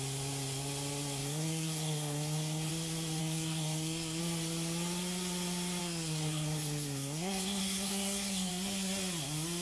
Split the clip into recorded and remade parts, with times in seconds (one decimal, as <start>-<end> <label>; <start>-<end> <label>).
0.0-1.2 recorded; 1.2-2.7 remade; 2.7-3.2 recorded; 3.2-4.2 remade; 4.2-5.8 recorded; 5.8-8.5 remade; 8.5-9.6 recorded